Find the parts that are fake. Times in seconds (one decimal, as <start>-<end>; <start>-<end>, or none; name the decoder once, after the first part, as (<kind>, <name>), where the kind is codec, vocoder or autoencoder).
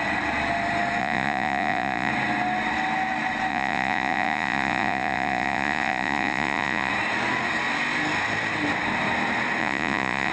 1.0-2.1 (vocoder, Vocos); 3.5-6.9; 9.6-10.3